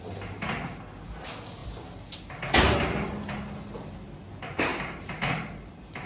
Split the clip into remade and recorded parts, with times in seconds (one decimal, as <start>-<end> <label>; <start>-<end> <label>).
0.0-6.1 recorded